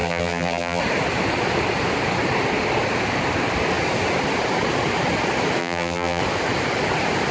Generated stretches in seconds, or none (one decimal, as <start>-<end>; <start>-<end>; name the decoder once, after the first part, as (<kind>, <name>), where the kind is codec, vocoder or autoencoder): 0.0-0.8 (vocoder, BigVGAN v2); 5.6-6.2

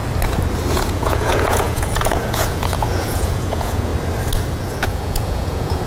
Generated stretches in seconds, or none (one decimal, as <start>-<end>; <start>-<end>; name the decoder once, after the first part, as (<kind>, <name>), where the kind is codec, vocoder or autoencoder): 0.7-3.9 (vocoder, Vocos); 4.6-5.9

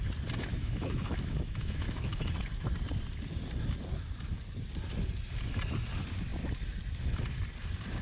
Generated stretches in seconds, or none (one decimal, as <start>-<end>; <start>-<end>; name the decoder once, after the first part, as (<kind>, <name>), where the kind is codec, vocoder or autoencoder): 0.5-2.2 (autoencoder, DAC-VAE)

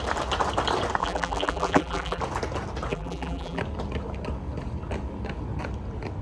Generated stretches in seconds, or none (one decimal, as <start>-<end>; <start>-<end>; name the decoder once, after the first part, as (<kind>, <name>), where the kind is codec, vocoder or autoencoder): 1.0-2.2 (vocoder, BigVGAN v2); 2.9-3.6

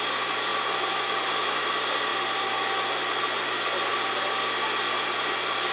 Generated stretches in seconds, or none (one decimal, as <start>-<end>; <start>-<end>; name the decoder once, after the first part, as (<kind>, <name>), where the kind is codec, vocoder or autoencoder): 0.0-0.5 (vocoder, BigVGAN v2); 1.1-2.1; 3.2-5.7